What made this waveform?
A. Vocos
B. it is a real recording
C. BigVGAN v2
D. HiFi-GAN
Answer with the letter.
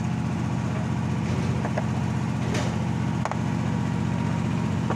B